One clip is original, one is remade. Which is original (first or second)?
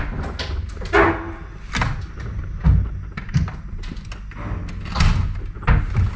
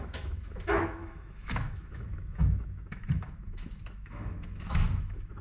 first